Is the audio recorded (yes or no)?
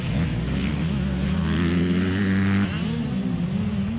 yes